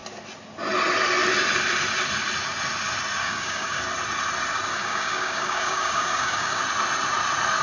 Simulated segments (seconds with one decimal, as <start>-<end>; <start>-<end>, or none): 3.2-3.8; 4.7-6.6